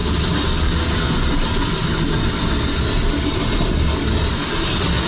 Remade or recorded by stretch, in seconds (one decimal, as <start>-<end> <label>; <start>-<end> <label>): 0.0-5.1 recorded